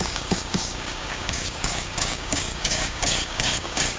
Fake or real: fake